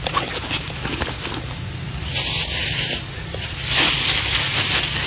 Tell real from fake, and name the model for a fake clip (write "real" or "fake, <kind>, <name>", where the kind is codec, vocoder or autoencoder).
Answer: real